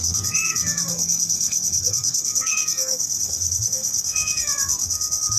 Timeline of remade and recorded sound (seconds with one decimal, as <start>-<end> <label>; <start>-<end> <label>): 0.0-5.4 remade